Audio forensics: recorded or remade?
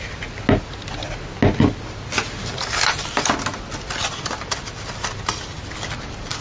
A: recorded